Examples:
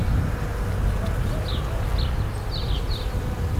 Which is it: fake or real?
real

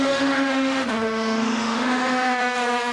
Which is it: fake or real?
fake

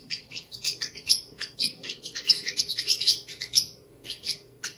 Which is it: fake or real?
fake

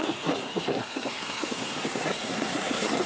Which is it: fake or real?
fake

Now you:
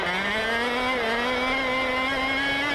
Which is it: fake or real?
real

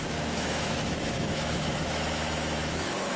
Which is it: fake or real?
fake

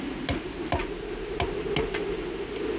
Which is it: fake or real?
real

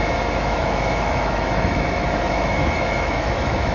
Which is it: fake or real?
fake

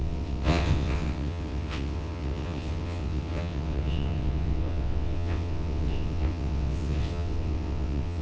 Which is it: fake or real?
fake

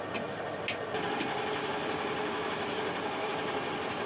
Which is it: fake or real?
real